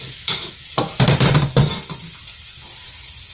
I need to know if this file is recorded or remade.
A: recorded